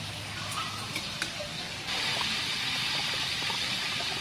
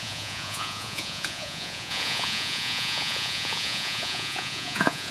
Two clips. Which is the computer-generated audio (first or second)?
second